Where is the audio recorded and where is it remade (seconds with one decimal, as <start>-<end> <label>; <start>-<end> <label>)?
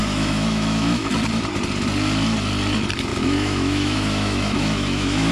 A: 0.0-1.1 remade; 1.1-3.1 recorded; 3.1-5.3 remade